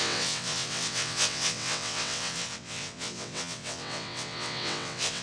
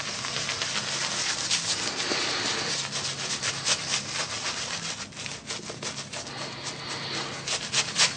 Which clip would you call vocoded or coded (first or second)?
first